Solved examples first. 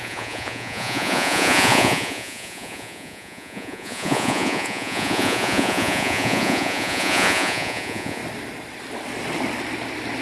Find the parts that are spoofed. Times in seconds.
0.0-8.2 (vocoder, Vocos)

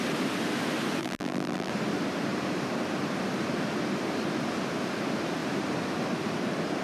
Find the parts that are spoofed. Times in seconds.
1.0-1.7 (vocoder, BigVGAN v2)

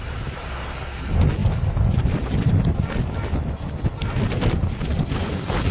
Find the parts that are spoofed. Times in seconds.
none

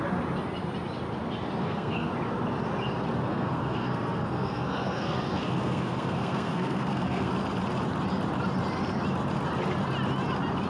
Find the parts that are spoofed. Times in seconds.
1.6-2.1 (codec, SNAC); 3.3-7.3